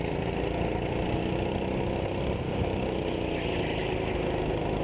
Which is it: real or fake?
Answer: real